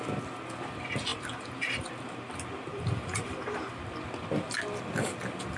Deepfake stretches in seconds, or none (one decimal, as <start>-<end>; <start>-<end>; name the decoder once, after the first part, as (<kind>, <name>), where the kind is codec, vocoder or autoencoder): 1.1-1.9 (vocoder, BigVGAN v2); 2.7-3.7

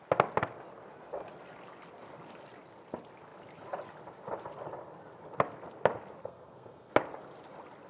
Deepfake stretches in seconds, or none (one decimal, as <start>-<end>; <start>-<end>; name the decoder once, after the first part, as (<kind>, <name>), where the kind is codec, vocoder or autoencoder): 6.2-6.9 (codec, SNAC)

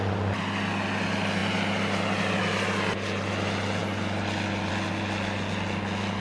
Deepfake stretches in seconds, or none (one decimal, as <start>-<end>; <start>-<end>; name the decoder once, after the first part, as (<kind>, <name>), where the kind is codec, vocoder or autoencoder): none

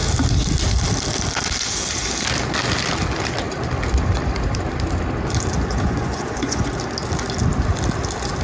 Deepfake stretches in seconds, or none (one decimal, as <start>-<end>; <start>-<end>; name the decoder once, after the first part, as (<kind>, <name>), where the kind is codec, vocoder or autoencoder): 5.7-6.7 (vocoder, Vocos)

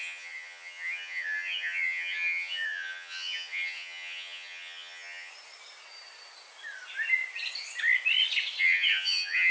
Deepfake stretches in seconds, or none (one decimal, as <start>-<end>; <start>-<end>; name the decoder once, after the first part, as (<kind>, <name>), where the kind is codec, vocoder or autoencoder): 0.0-5.3 (vocoder, HiFi-GAN); 8.6-9.5

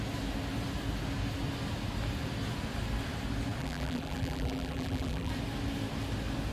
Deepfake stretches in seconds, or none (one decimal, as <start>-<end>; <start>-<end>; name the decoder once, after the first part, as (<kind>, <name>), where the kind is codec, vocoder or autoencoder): 3.6-5.3 (vocoder, BigVGAN v2)